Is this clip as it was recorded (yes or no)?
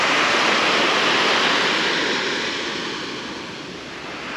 yes